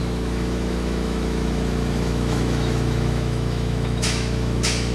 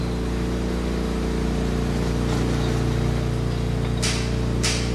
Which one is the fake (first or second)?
first